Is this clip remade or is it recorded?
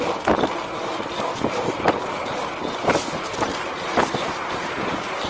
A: remade